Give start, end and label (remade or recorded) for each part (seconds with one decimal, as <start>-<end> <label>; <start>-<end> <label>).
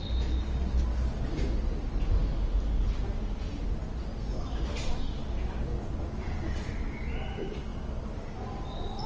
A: 0.0-9.1 recorded